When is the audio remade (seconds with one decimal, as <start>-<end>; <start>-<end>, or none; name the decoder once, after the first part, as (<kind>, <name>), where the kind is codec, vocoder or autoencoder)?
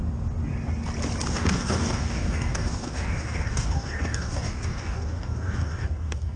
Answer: 1.3-6.4 (codec, DAC)